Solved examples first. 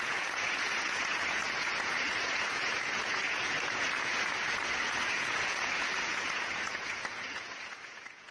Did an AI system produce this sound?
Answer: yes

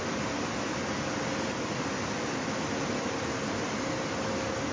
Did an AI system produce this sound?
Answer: no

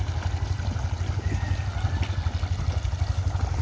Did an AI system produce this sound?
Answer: no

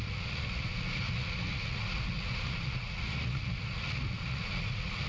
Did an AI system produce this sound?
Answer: yes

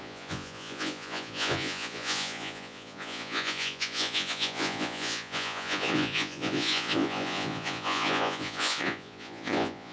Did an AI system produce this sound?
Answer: yes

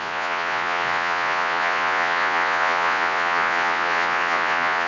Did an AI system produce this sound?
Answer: yes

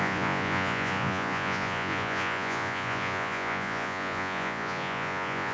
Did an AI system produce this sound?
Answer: yes